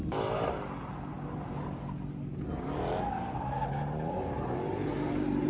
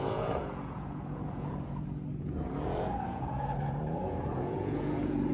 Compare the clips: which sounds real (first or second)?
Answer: first